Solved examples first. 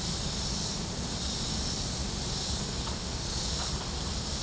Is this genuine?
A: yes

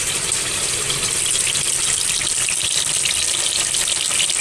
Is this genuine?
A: yes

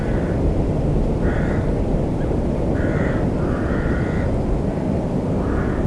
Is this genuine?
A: yes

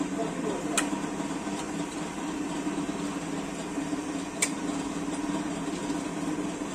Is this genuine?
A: yes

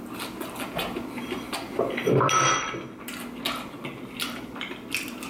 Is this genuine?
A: yes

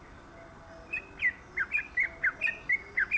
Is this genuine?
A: yes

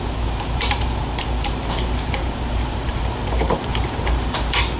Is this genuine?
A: no